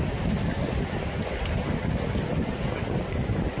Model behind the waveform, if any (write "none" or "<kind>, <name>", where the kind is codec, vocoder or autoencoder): none